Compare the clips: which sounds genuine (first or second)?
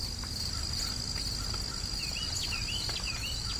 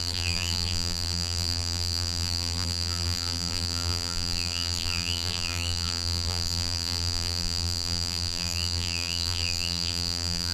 first